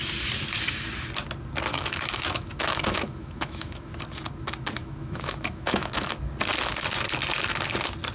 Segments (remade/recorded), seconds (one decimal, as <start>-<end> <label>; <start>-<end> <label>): 0.0-1.7 recorded; 1.7-3.9 remade; 3.9-4.8 recorded; 4.8-6.1 remade; 6.1-8.1 recorded